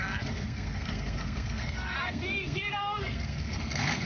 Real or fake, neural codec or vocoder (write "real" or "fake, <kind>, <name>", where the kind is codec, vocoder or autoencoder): fake, codec, SNAC